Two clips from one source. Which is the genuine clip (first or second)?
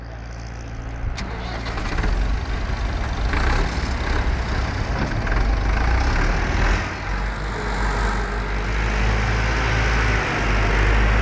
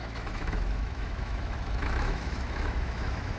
first